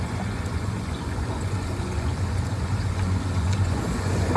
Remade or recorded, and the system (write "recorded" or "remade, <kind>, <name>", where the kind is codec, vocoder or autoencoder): remade, vocoder, Vocos